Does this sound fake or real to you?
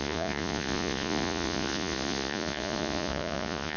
fake